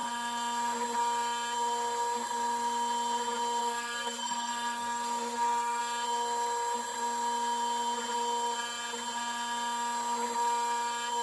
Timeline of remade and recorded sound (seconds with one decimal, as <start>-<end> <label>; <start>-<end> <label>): 0.0-3.6 recorded; 3.6-5.8 remade; 5.8-11.2 recorded

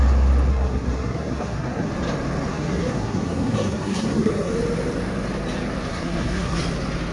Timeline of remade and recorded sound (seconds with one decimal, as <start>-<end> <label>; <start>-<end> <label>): 0.0-0.5 recorded; 0.5-1.9 remade; 1.9-2.5 recorded; 2.5-4.5 remade; 4.5-5.9 recorded; 5.9-6.6 remade; 6.6-7.1 recorded